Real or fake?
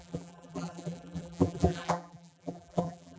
fake